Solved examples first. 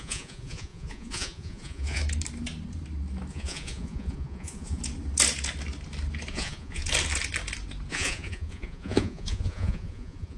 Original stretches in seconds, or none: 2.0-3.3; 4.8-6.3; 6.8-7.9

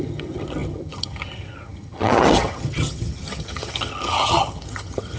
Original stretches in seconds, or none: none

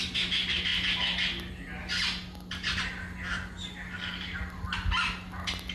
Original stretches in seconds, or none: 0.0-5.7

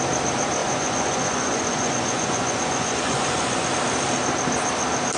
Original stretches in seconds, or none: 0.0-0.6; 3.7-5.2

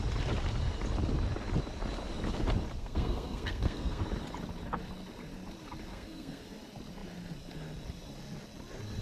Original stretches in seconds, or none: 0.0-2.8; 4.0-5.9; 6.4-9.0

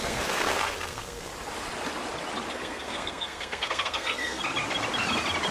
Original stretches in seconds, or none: 1.3-2.5; 4.4-5.5

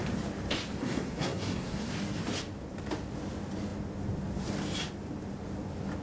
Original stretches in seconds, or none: 0.0-0.8; 1.9-6.0

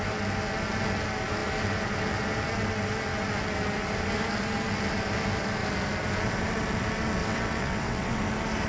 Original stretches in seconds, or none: 0.0-7.2; 8.2-8.7